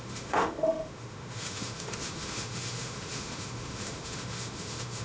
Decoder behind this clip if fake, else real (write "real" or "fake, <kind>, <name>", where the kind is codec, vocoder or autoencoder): fake, autoencoder, DAC-VAE